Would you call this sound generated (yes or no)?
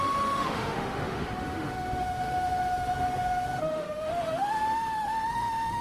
yes